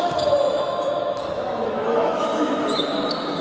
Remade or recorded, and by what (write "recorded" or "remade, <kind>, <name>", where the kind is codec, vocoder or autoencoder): remade, autoencoder, DAC-VAE